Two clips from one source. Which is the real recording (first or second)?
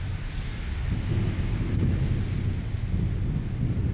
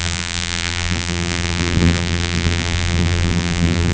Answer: first